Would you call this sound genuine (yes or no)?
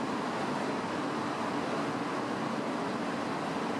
yes